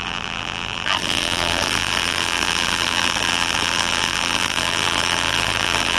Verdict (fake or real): fake